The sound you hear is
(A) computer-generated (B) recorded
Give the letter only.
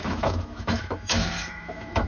A